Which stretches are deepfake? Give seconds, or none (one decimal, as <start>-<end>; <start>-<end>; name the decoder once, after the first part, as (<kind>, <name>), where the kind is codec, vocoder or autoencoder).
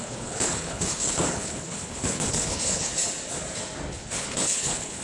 0.0-2.9 (codec, HILCodec); 3.9-5.0